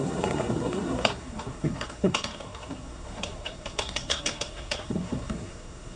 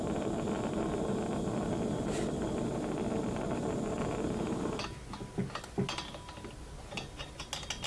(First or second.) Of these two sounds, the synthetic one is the first